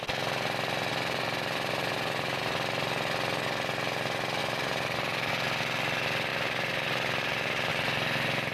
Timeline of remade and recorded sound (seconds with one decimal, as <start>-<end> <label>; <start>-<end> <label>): 0.0-0.9 recorded; 0.9-2.4 remade; 2.4-4.4 recorded; 4.4-5.3 remade; 5.3-6.3 recorded; 6.3-7.7 remade; 7.7-8.5 recorded